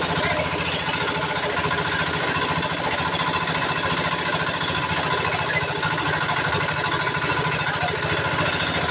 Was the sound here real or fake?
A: real